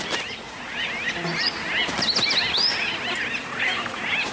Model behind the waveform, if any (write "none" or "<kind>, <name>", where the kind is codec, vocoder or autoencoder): none